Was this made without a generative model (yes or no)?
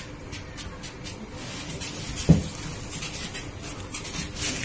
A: yes